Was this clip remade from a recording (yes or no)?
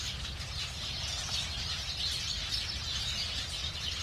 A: no